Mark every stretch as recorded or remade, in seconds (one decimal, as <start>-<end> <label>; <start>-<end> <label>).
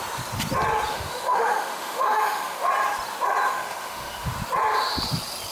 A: 0.0-0.9 recorded; 0.9-2.7 remade; 2.7-3.5 recorded; 3.5-4.3 remade; 4.3-5.5 recorded